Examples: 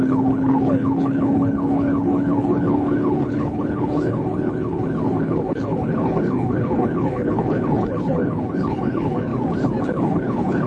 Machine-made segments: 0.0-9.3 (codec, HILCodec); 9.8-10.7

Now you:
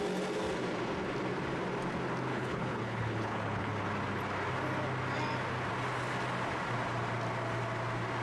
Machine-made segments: 2.3-3.7 (codec, HILCodec)

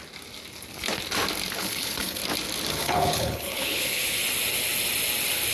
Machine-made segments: 1.6-2.2 (codec, HILCodec); 2.7-4.2

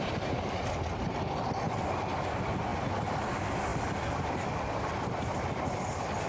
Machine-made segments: none

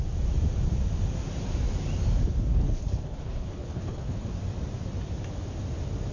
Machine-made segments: 2.5-4.3 (codec, HILCodec)

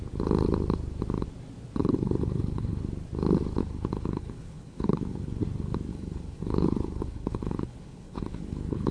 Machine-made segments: 1.8-2.8 (codec, HILCodec); 3.6-5.4; 5.9-8.9